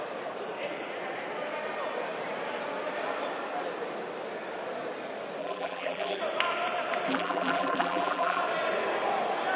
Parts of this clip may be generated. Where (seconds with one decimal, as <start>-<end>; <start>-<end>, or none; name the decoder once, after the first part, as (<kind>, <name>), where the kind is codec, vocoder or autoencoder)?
5.4-6.2 (vocoder, BigVGAN v2); 7.1-8.4